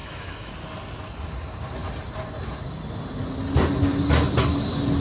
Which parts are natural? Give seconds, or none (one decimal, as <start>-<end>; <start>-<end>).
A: 0.5-5.0